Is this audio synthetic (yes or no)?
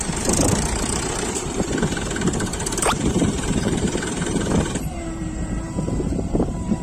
yes